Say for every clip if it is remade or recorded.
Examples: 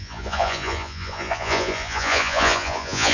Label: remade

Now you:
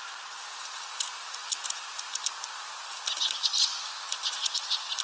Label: recorded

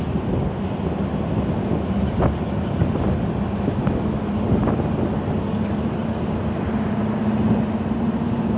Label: recorded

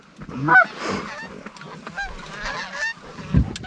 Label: recorded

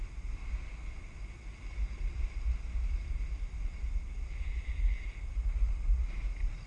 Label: recorded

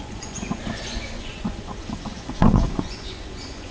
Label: remade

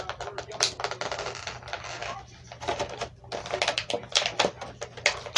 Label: recorded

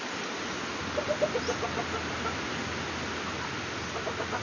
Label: recorded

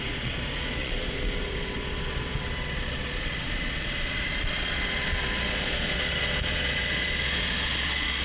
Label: remade